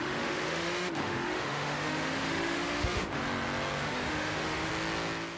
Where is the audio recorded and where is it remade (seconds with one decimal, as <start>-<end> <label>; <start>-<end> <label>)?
0.0-3.2 remade; 3.2-3.8 recorded; 3.8-4.7 remade; 4.7-5.4 recorded